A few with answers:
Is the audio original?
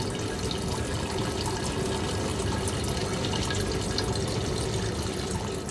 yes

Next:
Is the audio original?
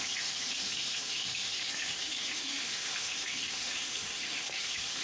no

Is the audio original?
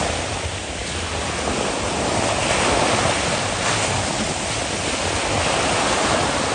yes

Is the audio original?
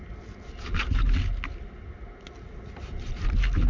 yes